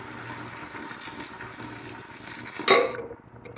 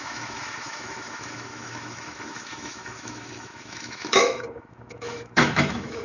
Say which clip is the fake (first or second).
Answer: second